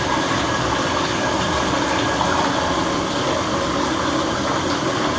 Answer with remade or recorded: recorded